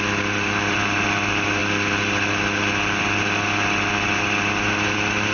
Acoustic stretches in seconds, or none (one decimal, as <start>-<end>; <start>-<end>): 0.0-5.3